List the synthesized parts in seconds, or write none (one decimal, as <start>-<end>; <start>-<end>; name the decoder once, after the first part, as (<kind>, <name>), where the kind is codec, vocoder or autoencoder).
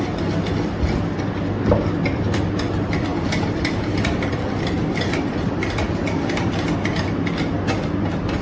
3.1-6.5 (vocoder, BigVGAN v2)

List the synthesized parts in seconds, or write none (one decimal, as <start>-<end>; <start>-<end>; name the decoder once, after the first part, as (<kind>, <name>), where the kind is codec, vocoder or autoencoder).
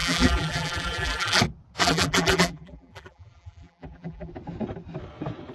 0.0-1.4 (vocoder, BigVGAN v2); 1.8-4.3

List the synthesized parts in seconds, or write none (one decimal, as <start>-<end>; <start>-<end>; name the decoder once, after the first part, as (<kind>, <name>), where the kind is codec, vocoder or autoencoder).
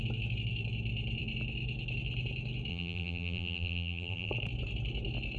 2.7-4.3 (vocoder, BigVGAN v2)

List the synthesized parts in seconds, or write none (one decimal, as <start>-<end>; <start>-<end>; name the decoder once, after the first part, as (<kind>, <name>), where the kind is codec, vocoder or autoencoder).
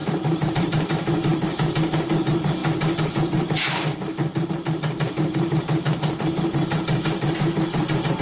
0.0-8.2 (vocoder, BigVGAN v2)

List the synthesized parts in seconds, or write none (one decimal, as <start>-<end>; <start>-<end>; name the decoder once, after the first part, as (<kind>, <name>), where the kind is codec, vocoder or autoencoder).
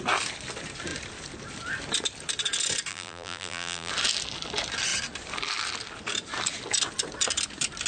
2.9-3.9 (vocoder, BigVGAN v2)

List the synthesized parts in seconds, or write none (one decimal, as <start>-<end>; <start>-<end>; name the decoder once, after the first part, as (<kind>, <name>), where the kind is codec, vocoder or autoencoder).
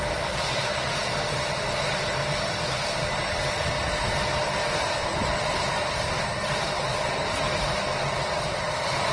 none